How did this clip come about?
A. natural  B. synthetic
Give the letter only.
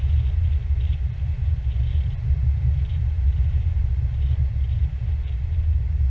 A